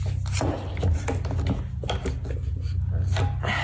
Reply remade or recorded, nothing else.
recorded